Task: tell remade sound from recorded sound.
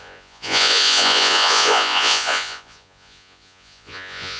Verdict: remade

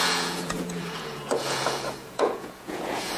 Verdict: remade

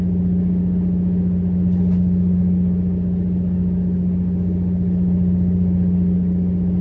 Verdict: recorded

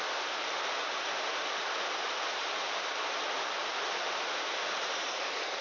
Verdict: recorded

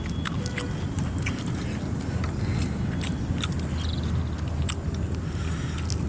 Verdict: recorded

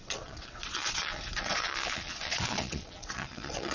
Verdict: remade